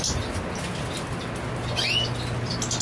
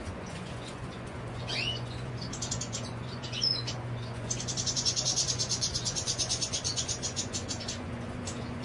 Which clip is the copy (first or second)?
second